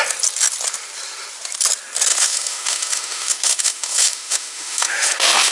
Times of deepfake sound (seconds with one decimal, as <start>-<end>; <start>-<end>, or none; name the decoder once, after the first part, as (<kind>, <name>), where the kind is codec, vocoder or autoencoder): 2.1-5.5 (autoencoder, DAC-VAE)